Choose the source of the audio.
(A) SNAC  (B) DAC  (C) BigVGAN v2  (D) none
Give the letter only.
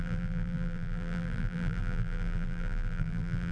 C